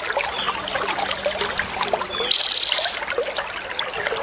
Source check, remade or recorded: recorded